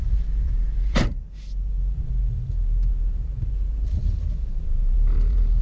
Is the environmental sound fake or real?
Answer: fake